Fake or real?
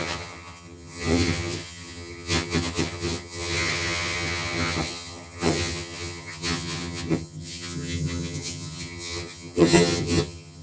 fake